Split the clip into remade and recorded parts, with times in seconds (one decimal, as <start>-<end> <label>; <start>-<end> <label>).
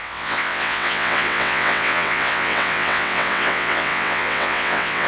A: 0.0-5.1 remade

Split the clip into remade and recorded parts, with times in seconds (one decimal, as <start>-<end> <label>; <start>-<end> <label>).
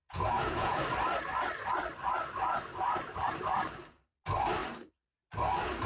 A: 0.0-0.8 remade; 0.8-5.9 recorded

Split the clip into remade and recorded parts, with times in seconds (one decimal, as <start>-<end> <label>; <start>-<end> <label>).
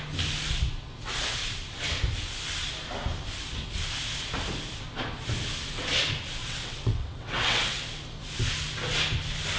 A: 0.0-6.4 recorded; 6.4-7.8 remade; 7.8-9.6 recorded